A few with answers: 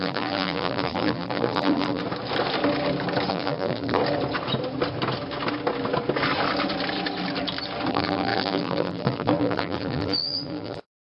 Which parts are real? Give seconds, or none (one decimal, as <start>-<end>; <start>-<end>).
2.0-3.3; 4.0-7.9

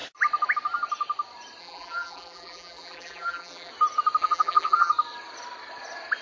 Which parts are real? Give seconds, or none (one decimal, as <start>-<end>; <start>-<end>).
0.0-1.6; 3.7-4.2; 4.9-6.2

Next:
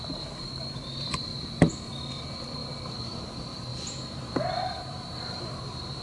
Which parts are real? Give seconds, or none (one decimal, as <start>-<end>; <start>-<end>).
1.3-2.1

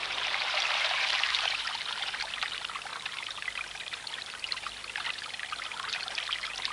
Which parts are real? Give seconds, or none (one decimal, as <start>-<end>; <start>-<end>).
1.6-2.9; 3.5-6.7

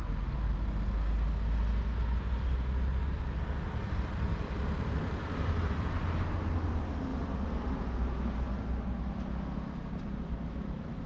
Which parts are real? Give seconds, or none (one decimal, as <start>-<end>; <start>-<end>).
0.0-4.3; 6.0-11.1

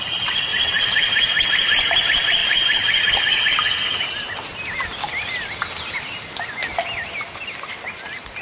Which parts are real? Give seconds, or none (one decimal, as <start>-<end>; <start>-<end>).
0.0-8.4

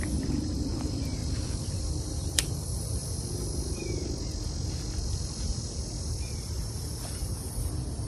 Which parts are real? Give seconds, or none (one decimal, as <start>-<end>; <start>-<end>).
3.0-7.5